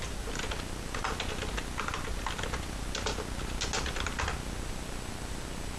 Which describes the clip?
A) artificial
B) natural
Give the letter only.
B